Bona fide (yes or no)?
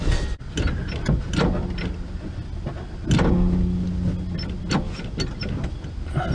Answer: yes